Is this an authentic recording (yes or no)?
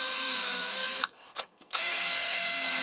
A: no